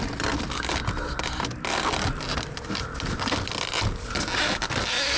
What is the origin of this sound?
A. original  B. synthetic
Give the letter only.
A